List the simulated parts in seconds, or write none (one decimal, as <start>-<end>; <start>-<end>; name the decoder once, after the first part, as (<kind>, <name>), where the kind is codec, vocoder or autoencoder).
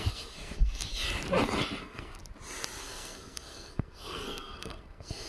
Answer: 0.0-0.9 (codec, SNAC); 1.8-2.2; 2.8-5.3